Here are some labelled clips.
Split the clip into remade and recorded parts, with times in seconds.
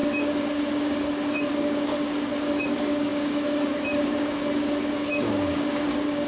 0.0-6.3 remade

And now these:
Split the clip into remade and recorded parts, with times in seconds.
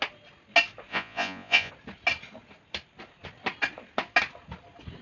0.0-0.9 recorded; 0.9-1.7 remade; 1.7-5.0 recorded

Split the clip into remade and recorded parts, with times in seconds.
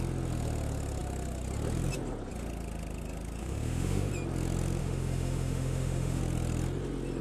0.0-3.4 recorded; 3.4-4.1 remade; 4.1-4.8 recorded; 4.8-6.2 remade; 6.2-7.2 recorded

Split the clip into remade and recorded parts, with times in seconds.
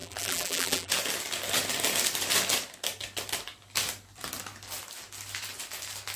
0.0-0.9 remade; 0.9-6.2 recorded